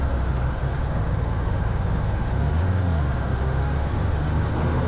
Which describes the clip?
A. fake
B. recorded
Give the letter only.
A